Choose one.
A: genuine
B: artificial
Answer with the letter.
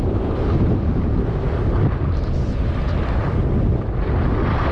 A